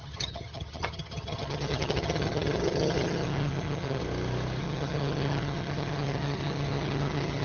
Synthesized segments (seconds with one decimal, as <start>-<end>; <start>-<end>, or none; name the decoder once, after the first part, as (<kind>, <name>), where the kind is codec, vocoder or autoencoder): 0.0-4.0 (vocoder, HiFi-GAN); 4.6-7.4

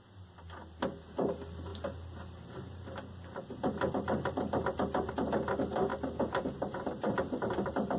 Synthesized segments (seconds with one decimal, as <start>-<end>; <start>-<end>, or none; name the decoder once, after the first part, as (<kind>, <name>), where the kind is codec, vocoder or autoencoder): none

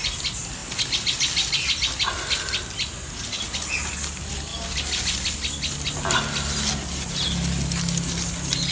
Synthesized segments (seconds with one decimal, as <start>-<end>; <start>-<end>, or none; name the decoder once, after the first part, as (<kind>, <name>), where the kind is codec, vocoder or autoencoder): none